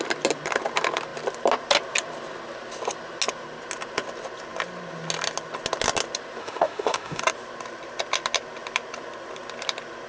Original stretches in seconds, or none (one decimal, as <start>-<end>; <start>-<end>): 0.0-6.4; 7.2-10.1